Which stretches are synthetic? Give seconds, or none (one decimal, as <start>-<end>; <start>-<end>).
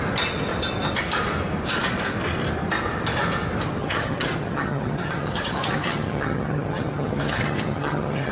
3.8-8.3